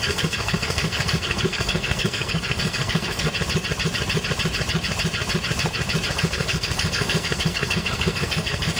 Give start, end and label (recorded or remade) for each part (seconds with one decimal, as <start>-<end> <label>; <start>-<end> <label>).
0.0-3.3 remade; 3.3-6.1 recorded; 6.1-8.8 remade

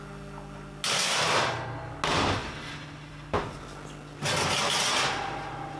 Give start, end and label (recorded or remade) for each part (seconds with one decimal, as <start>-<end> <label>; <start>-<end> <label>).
0.0-5.8 recorded